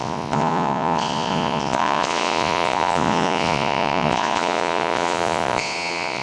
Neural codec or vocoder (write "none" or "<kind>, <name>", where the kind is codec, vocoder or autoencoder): vocoder, Vocos